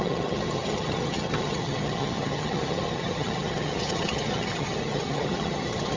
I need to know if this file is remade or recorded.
remade